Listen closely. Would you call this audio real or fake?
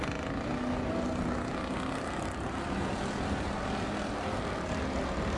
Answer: real